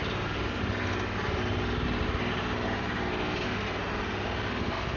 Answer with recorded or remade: recorded